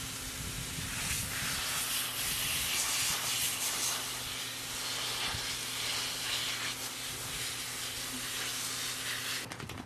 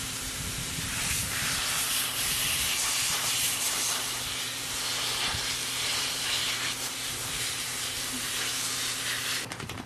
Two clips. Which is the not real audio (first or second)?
second